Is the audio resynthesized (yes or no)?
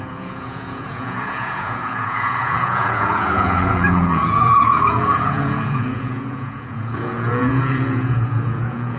yes